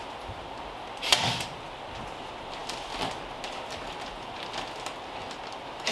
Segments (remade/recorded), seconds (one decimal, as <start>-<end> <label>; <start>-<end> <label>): 0.0-5.9 recorded